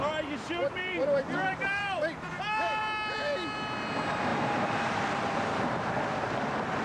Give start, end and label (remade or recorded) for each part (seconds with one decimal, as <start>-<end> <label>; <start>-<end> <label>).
0.0-0.6 recorded; 0.6-2.8 remade; 2.8-4.3 recorded; 4.3-5.9 remade; 5.9-6.8 recorded